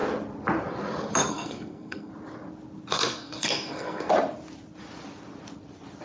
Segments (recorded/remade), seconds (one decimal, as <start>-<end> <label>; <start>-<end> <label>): 0.0-1.3 recorded; 1.3-2.1 remade; 2.1-2.9 recorded; 2.9-4.1 remade; 4.1-6.0 recorded